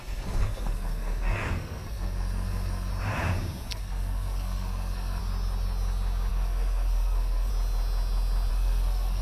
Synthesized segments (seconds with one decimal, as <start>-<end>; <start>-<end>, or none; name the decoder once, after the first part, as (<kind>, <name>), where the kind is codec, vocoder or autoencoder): 0.0-2.9 (codec, SNAC); 3.7-5.2; 6.3-7.5; 8.5-9.2